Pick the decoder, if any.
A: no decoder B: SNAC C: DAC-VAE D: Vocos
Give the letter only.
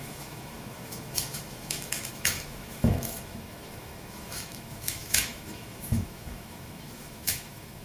C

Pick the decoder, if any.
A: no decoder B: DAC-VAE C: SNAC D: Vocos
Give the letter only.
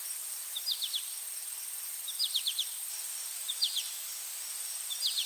A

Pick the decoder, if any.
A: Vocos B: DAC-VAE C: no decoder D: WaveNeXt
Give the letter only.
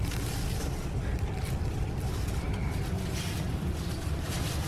C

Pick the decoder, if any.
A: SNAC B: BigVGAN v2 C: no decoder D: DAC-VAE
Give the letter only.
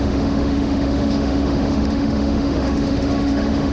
D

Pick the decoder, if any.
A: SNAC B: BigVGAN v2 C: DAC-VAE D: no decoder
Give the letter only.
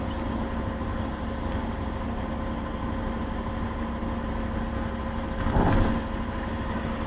D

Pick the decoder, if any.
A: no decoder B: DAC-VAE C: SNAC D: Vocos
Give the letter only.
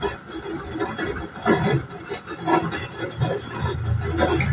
A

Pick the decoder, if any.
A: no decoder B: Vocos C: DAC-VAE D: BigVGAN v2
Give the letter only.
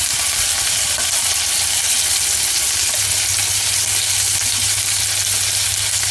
A